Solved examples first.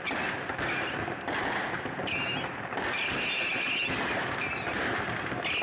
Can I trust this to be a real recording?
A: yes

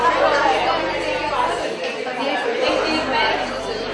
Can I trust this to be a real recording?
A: yes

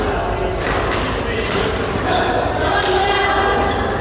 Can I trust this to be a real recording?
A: yes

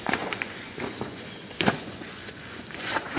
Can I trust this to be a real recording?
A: no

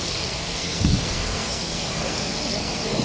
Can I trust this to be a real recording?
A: no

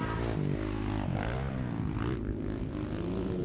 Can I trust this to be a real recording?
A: yes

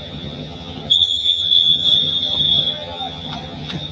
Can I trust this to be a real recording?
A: no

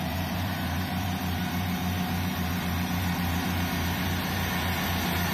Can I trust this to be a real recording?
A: no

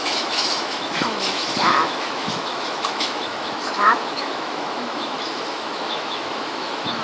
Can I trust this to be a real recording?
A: no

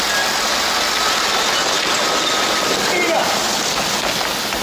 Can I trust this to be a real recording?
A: yes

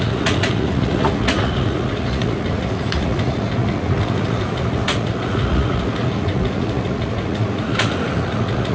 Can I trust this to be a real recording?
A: no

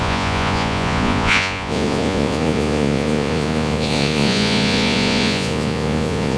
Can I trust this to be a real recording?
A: no